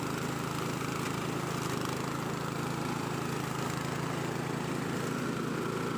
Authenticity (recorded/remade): recorded